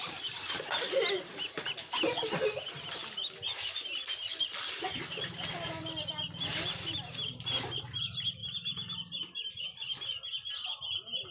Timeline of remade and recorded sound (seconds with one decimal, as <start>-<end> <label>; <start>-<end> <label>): 0.0-6.5 recorded; 6.5-7.8 remade; 7.8-8.4 recorded; 8.4-9.6 remade; 9.6-11.3 recorded